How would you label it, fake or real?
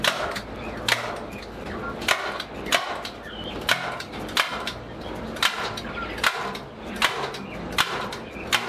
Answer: real